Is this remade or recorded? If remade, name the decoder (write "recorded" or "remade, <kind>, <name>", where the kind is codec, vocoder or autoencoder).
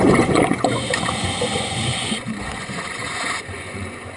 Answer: remade, vocoder, Vocos